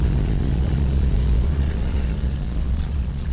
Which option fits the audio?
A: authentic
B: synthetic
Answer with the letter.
B